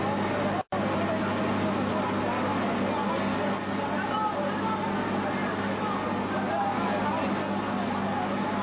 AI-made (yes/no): no